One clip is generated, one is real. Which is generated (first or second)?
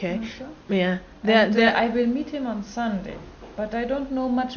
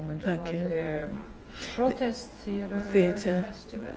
second